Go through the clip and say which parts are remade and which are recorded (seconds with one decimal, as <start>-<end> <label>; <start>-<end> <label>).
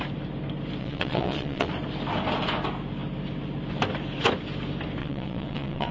0.0-0.8 recorded; 0.8-1.7 remade; 1.7-5.0 recorded; 5.0-5.9 remade